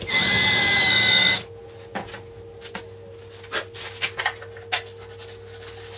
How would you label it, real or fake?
real